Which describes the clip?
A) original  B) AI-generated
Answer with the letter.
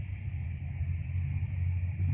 A